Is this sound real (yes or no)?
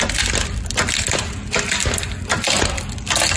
yes